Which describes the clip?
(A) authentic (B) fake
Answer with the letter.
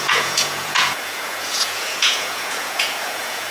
B